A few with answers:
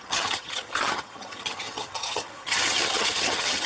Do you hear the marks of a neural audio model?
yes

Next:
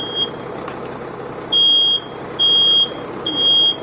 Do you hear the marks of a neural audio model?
no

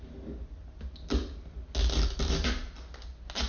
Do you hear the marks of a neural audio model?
no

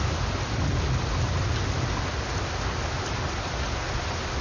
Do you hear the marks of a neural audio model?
no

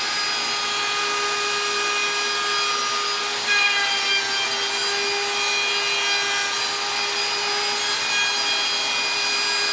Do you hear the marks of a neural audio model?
no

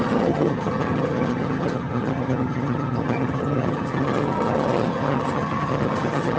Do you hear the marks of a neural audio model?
yes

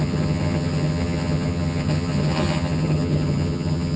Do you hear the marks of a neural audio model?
yes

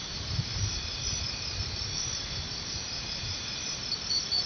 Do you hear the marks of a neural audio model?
no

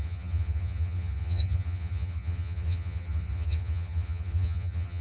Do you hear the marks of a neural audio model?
yes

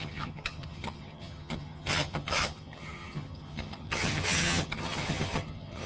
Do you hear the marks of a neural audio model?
yes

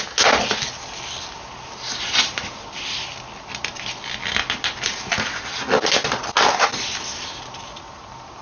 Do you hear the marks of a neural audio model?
no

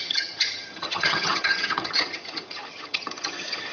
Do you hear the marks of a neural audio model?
yes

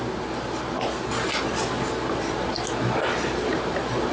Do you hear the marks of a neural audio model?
no